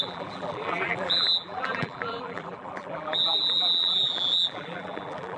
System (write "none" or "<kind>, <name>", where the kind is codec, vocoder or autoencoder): vocoder, BigVGAN v2